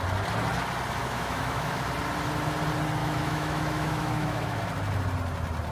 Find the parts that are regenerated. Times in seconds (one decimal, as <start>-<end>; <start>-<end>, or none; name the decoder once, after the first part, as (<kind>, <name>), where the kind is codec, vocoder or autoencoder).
1.0-1.8 (autoencoder, DAC-VAE); 3.0-4.6